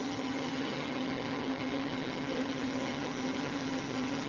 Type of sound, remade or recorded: remade